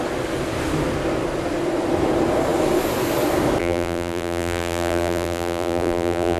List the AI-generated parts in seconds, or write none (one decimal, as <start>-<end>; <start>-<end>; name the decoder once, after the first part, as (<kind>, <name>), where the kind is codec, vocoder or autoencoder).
3.6-6.4 (vocoder, BigVGAN v2)